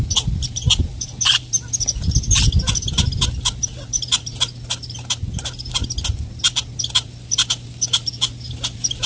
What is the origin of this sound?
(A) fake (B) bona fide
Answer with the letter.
B